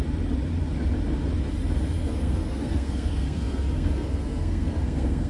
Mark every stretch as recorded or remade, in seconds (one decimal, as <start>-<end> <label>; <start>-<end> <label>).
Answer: 0.0-2.0 recorded; 2.0-5.3 remade